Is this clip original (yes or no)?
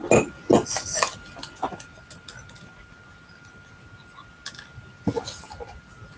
yes